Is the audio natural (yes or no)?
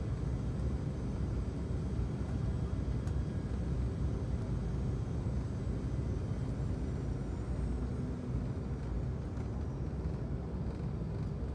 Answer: yes